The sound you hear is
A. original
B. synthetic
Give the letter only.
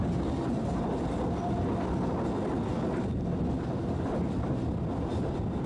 A